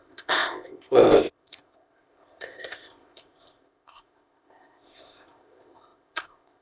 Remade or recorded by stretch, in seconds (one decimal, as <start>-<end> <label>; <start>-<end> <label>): 0.0-6.6 remade